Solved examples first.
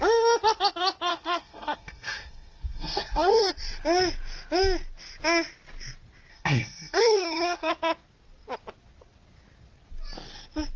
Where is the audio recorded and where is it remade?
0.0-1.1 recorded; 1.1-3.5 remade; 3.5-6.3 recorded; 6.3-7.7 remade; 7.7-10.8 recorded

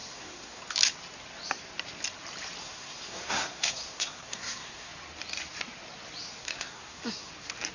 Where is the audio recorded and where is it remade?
0.0-0.6 remade; 0.6-2.6 recorded; 2.6-4.9 remade; 4.9-6.4 recorded; 6.4-7.3 remade; 7.3-7.7 recorded

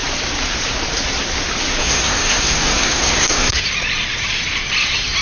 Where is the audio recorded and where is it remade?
0.0-1.8 recorded; 1.8-3.6 remade; 3.6-5.2 recorded

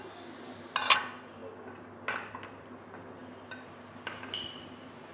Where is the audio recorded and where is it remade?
0.0-5.1 recorded